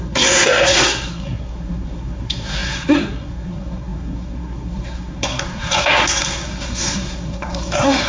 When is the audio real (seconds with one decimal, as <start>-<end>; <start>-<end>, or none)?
none